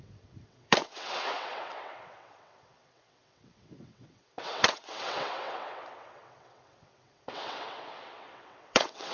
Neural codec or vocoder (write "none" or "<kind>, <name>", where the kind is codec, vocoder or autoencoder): vocoder, WaveNeXt